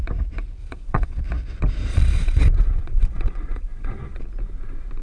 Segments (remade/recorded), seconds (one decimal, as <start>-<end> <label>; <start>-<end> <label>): 0.0-0.6 recorded; 0.6-1.2 remade; 1.2-1.9 recorded; 1.9-4.2 remade; 4.2-5.0 recorded

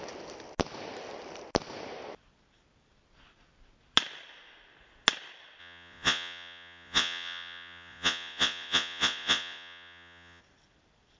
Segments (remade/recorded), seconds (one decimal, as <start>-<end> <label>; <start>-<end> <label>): 0.0-5.6 recorded; 5.6-10.4 remade; 10.4-11.2 recorded

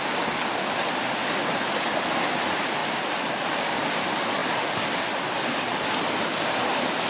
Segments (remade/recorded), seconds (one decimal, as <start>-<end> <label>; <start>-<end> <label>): 0.0-7.1 recorded